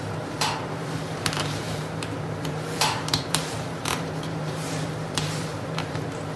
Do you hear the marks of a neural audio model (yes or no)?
yes